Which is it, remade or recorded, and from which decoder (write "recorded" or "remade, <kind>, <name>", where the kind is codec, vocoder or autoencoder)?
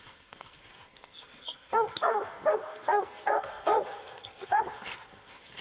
remade, codec, SNAC